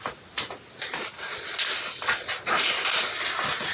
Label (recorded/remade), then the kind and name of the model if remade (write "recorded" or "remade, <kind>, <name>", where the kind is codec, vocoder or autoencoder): recorded